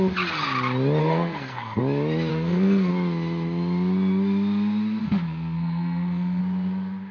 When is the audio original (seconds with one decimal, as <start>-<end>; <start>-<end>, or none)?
0.0-1.0; 1.8-2.3; 2.9-5.0; 6.4-7.1